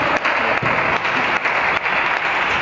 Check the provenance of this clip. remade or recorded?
recorded